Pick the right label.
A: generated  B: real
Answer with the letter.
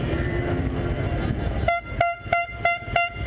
B